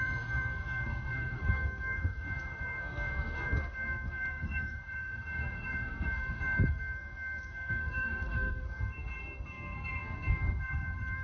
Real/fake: fake